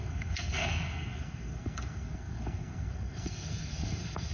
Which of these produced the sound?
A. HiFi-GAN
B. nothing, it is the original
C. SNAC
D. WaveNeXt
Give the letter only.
C